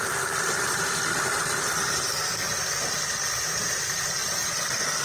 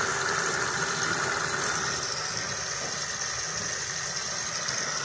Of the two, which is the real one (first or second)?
second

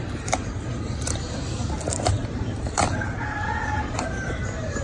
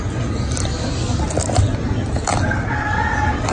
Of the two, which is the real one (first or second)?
second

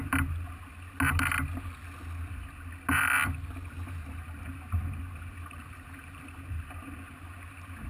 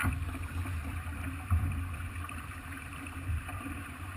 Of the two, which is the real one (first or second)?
first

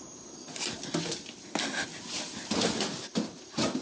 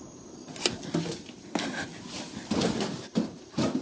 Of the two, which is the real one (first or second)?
first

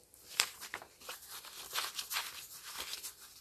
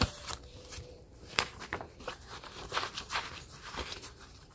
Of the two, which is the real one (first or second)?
first